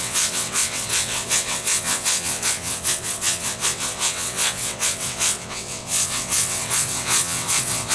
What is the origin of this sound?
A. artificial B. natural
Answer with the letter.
A